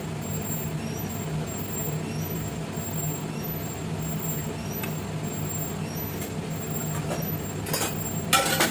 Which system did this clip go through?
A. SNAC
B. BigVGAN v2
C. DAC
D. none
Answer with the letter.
D